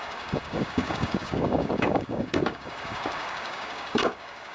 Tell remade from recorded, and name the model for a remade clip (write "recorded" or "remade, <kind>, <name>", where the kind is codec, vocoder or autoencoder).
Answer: remade, codec, DAC